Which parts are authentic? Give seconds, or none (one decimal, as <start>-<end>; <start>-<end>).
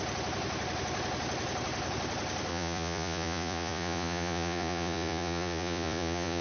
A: 0.0-2.5